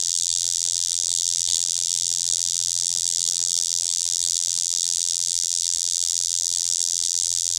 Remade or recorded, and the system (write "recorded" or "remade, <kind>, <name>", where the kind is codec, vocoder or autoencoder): remade, vocoder, BigVGAN v2